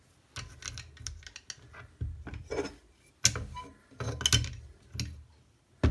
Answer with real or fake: real